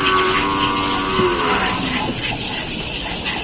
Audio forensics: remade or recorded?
recorded